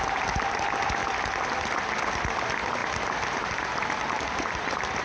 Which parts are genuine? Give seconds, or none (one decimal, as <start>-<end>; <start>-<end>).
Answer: 0.0-5.0